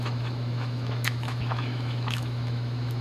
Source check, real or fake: fake